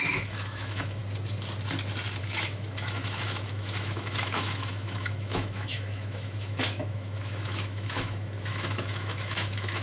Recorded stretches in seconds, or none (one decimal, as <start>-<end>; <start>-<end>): 1.0-2.2